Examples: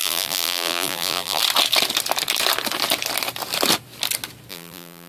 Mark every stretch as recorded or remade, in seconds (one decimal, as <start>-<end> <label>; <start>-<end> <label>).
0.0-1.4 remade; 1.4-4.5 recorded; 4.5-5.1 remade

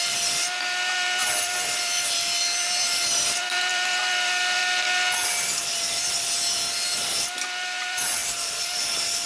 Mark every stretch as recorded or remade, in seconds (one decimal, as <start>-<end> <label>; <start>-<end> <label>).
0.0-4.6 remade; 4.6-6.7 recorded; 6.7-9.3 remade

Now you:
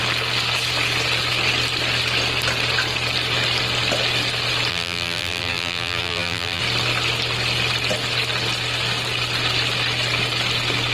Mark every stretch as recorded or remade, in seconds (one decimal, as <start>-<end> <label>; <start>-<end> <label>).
0.0-4.7 recorded; 4.7-6.6 remade; 6.6-10.9 recorded

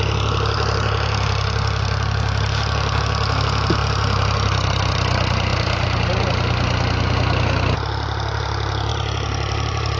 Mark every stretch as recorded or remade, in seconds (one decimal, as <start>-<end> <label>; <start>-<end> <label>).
0.0-5.5 recorded; 5.5-6.3 remade; 6.3-8.9 recorded; 8.9-10.0 remade

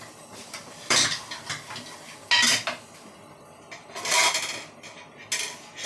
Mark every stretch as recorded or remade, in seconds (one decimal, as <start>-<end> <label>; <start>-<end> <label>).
0.0-0.4 recorded; 0.4-1.2 remade; 1.2-5.9 recorded

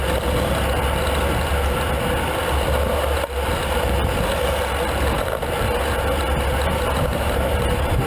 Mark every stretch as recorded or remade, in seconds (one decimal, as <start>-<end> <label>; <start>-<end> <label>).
0.0-7.1 recorded; 7.1-8.1 remade

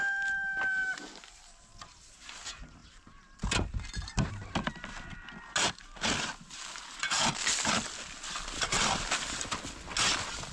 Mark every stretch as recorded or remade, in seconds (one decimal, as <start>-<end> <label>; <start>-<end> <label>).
0.0-10.5 recorded

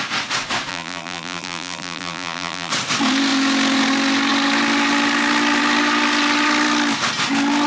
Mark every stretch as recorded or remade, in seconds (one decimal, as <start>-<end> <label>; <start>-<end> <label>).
0.0-0.7 recorded; 0.7-2.7 remade; 2.7-7.7 recorded